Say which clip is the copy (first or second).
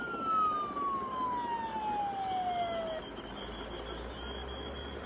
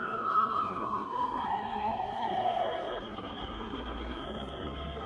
second